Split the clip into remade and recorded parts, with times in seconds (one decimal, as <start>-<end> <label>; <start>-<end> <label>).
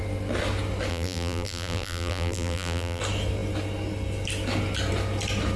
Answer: 0.0-0.9 recorded; 0.9-3.0 remade; 3.0-5.6 recorded